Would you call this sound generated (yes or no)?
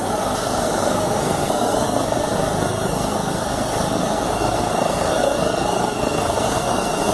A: yes